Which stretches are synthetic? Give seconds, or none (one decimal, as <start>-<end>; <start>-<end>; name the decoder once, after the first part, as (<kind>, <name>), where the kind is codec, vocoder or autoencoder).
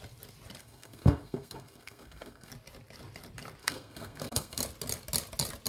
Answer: 0.6-2.5 (codec, SNAC); 3.6-4.6